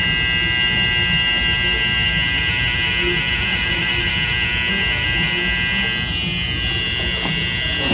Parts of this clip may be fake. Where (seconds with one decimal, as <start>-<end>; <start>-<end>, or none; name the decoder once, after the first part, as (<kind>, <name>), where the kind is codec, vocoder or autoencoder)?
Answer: 3.5-4.1 (vocoder, BigVGAN v2)